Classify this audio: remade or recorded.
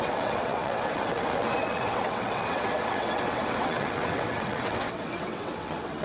remade